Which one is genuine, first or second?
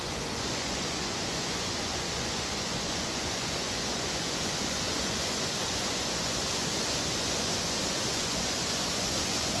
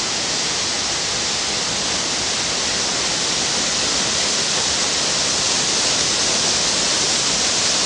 second